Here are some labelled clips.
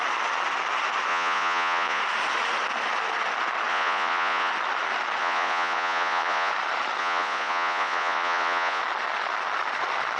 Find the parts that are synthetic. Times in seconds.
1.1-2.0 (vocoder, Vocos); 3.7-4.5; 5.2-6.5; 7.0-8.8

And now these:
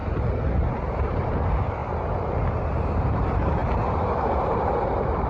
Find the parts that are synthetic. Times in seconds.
0.7-1.8 (vocoder, BigVGAN v2); 3.0-3.6; 4.2-5.3

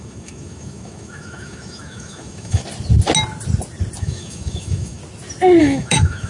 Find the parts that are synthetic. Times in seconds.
0.0-2.6 (autoencoder, DAC-VAE); 4.0-5.0; 5.6-6.3

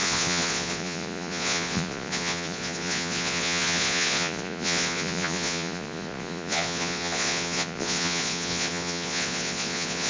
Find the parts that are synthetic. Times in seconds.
0.0-10.1 (vocoder, Vocos)

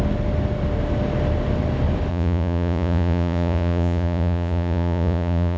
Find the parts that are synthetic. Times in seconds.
2.1-5.6 (vocoder, Vocos)

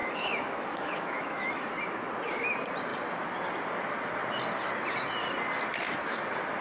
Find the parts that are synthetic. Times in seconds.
0.0-1.7 (autoencoder, DAC-VAE)

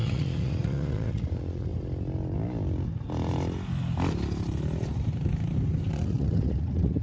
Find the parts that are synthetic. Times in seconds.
0.0-1.7 (vocoder, Vocos); 5.9-7.0